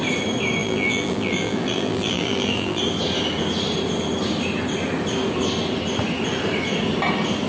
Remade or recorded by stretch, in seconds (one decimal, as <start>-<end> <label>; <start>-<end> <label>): 0.0-0.6 recorded; 0.6-2.8 remade; 2.8-7.5 recorded